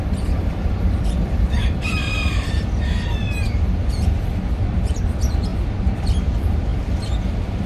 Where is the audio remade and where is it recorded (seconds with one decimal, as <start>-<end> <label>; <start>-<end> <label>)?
0.0-7.7 remade